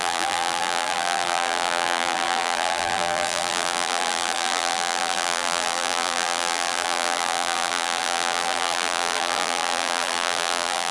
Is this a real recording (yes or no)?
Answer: no